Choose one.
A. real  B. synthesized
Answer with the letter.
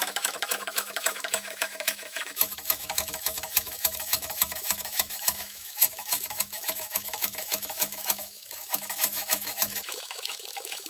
B